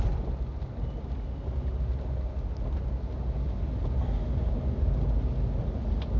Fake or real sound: real